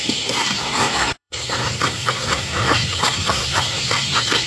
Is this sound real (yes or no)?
no